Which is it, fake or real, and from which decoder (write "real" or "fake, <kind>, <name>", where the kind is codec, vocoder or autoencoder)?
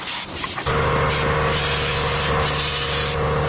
real